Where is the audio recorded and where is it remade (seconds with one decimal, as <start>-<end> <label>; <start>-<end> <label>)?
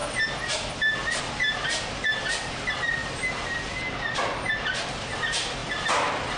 0.0-6.4 recorded